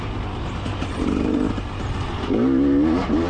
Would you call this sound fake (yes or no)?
no